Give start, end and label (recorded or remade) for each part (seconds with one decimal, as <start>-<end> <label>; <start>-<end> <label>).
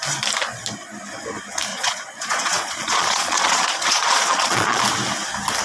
0.0-1.7 recorded; 1.7-4.8 remade; 4.8-5.6 recorded